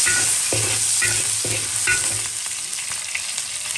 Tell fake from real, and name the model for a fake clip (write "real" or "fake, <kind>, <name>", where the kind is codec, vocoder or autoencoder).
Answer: real